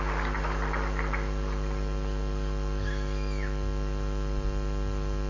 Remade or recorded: recorded